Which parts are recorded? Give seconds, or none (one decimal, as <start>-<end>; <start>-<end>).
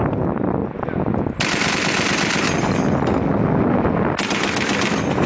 0.0-5.3